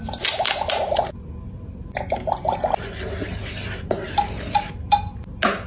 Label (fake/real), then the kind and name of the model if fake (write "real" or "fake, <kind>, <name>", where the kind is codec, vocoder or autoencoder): real